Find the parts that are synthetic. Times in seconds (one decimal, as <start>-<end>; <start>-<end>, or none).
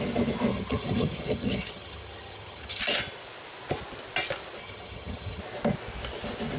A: 0.5-2.8; 4.6-5.4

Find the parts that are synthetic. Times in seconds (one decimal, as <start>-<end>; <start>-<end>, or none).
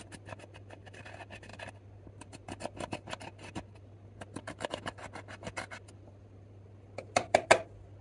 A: none